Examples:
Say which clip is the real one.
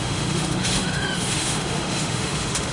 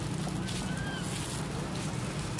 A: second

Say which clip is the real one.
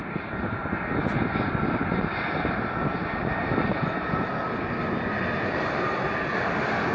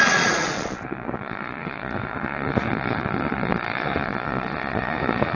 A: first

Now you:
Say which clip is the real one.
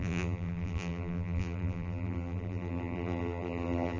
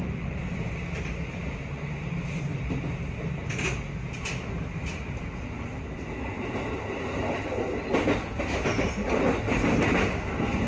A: second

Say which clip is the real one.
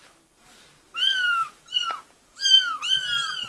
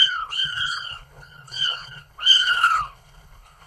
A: first